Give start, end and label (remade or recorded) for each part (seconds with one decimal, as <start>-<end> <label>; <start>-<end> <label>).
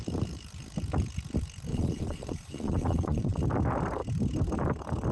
0.0-1.7 recorded; 1.7-3.4 remade; 3.4-5.1 recorded